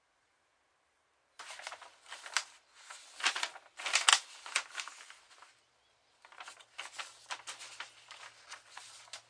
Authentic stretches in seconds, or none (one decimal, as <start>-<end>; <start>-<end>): 0.0-9.3